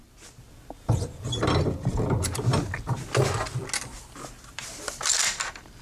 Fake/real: real